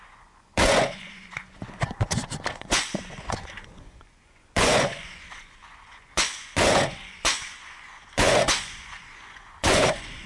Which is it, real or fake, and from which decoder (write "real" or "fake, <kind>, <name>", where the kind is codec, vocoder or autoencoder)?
fake, vocoder, Vocos